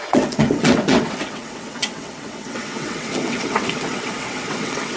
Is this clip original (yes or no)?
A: no